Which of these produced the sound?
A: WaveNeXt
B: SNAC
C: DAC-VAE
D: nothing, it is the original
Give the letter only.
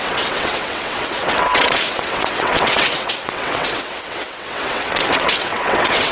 A